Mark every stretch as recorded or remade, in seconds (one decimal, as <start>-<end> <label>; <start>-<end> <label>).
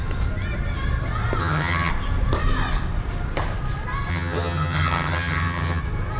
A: 0.0-1.4 recorded; 1.4-1.9 remade; 1.9-4.1 recorded; 4.1-5.8 remade; 5.8-6.2 recorded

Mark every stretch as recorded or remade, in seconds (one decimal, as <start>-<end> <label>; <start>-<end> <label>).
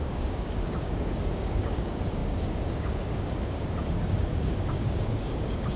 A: 0.0-5.8 remade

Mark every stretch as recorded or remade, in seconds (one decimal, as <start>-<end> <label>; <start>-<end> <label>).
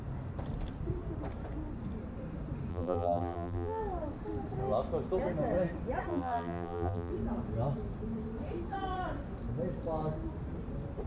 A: 0.0-2.7 recorded; 2.7-3.8 remade; 3.8-6.1 recorded; 6.1-7.1 remade; 7.1-11.1 recorded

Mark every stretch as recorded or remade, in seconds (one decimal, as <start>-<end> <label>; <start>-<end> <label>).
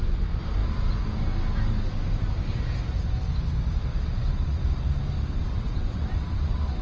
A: 0.0-3.9 recorded; 3.9-4.6 remade; 4.6-5.4 recorded; 5.4-6.8 remade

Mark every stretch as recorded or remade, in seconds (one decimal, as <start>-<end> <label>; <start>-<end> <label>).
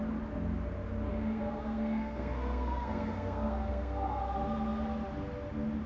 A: 0.0-1.1 recorded; 1.1-4.2 remade; 4.2-5.9 recorded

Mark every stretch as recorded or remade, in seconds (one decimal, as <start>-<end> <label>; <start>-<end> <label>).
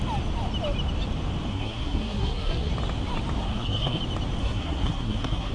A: 0.0-1.5 recorded; 1.5-2.7 remade; 2.7-3.4 recorded; 3.4-4.0 remade; 4.0-4.4 recorded; 4.4-5.5 remade